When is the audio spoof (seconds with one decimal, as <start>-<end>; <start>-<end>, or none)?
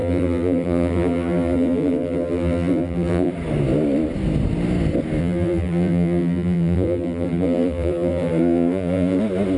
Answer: 0.0-3.3; 5.2-9.2